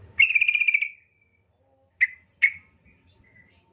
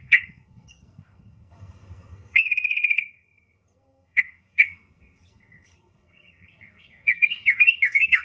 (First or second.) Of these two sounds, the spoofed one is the second